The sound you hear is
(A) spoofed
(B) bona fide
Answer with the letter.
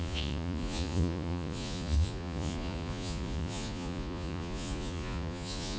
A